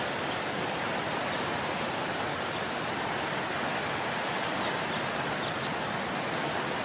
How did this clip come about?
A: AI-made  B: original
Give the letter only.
B